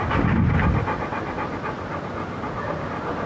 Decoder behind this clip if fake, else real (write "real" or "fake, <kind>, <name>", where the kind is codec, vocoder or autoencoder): real